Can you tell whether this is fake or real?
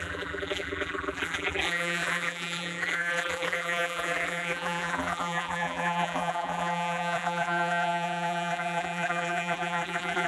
fake